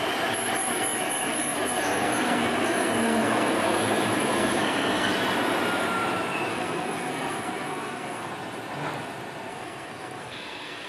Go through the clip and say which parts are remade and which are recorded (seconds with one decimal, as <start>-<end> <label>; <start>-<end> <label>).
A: 0.0-0.7 recorded; 0.7-5.1 remade; 5.1-6.5 recorded; 6.5-8.3 remade; 8.3-9.5 recorded; 9.5-10.9 remade